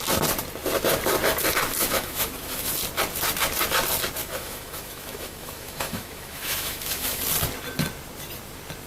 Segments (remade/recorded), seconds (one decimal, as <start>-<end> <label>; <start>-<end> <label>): 0.0-1.8 recorded; 1.8-2.7 remade; 2.7-4.2 recorded; 4.2-7.2 remade; 7.2-8.9 recorded